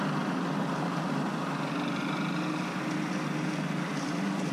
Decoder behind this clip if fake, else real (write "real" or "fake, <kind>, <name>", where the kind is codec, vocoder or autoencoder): real